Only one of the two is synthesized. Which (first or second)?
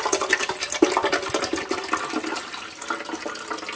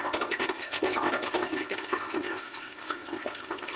second